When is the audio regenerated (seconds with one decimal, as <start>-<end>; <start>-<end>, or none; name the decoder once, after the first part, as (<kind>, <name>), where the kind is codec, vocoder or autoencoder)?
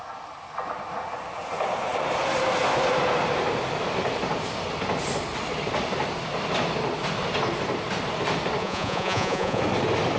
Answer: 8.6-9.6 (vocoder, Vocos)